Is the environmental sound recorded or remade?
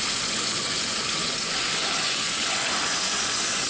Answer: remade